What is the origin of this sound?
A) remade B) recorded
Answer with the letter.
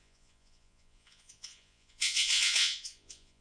A